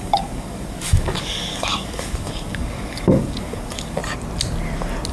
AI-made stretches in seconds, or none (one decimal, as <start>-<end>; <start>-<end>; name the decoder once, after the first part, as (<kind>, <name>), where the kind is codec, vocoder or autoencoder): 0.0-4.0 (codec, DAC)